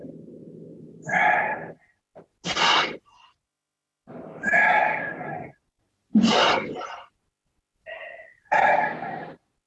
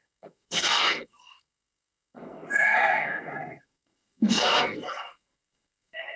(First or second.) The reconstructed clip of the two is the second